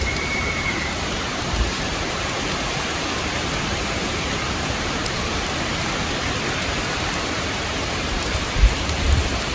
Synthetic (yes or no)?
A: yes